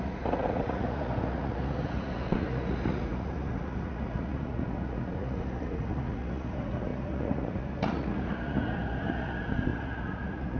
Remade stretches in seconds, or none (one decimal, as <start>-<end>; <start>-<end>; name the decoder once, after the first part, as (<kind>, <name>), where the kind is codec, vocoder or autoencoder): 0.0-10.6 (vocoder, Vocos)